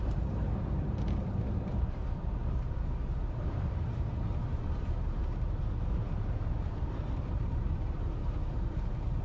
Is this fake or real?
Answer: fake